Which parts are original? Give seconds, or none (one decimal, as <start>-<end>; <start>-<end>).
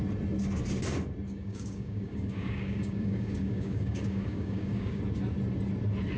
0.0-1.3; 5.0-6.2